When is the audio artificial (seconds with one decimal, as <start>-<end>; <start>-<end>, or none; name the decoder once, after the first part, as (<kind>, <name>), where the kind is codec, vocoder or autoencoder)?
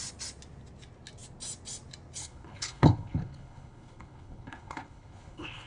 2.2-5.7 (codec, HILCodec)